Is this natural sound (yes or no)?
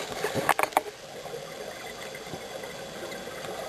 yes